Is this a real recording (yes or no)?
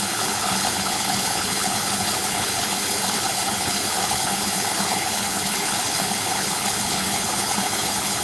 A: no